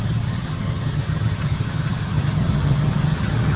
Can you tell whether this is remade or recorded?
remade